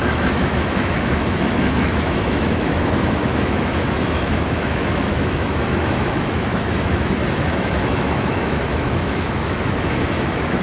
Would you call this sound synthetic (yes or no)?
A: yes